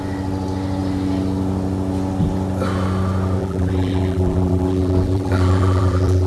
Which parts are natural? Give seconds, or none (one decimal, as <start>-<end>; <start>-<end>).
0.0-3.4